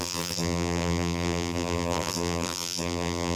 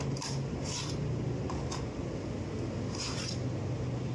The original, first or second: second